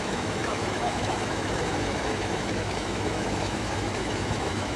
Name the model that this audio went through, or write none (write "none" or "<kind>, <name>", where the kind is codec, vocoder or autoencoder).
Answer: autoencoder, DAC-VAE